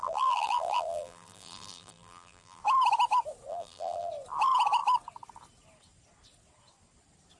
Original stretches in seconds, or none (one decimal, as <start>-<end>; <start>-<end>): 2.6-3.5; 4.1-7.4

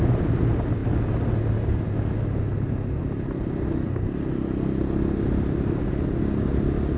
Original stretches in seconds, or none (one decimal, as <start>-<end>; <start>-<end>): 0.0-7.0

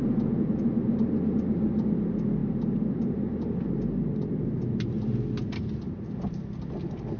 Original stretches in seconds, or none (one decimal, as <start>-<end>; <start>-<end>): 0.5-7.2

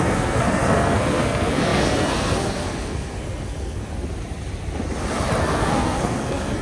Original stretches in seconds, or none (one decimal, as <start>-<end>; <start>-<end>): 3.9-5.4

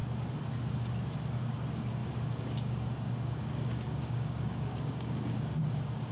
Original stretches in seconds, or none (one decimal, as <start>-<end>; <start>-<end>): 0.0-1.4